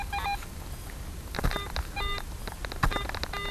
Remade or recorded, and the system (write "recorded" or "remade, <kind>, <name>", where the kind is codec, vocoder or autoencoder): recorded